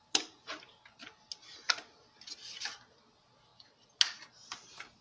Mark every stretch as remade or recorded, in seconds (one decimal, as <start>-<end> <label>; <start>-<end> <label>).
0.0-1.0 remade; 1.0-3.1 recorded; 3.1-3.5 remade; 3.5-4.3 recorded; 4.3-5.0 remade